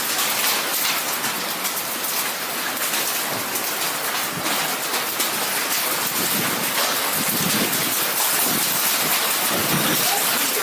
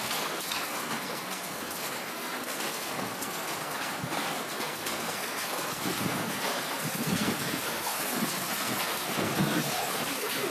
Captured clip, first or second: first